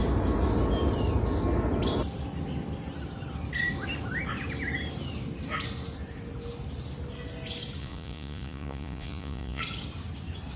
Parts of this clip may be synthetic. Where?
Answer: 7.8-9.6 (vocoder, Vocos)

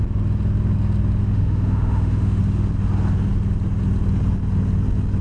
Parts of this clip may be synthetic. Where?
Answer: 1.2-2.4 (autoencoder, DAC-VAE)

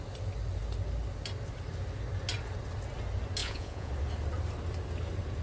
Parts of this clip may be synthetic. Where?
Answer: 3.4-3.9 (vocoder, Vocos)

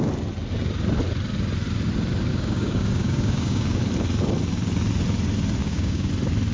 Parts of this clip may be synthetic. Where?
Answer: 2.3-3.8 (codec, DAC); 5.6-6.1

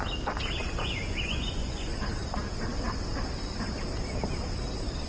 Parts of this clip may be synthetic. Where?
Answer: 0.6-2.0 (vocoder, Vocos)